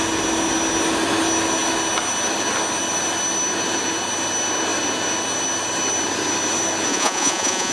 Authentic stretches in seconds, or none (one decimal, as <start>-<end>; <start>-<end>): 0.0-6.9